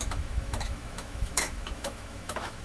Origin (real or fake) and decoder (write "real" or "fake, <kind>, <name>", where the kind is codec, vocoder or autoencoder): fake, autoencoder, DAC-VAE